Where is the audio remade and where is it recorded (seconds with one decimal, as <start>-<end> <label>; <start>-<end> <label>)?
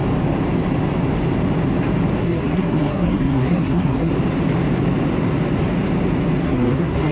0.0-2.2 recorded; 2.2-4.1 remade; 4.1-6.4 recorded; 6.4-7.1 remade